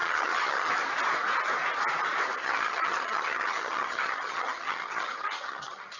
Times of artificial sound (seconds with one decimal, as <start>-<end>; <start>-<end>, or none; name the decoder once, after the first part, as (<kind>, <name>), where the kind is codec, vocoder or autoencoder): 0.0-0.7 (vocoder, HiFi-GAN); 2.4-6.0